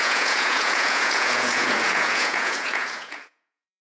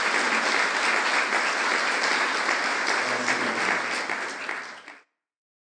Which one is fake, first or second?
first